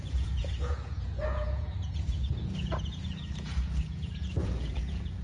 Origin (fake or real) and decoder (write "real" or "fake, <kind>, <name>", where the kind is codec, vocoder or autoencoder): fake, vocoder, Vocos